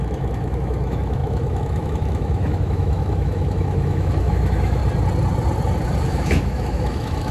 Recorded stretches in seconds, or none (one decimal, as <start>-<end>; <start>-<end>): 4.8-6.0